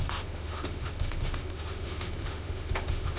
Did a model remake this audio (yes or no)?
yes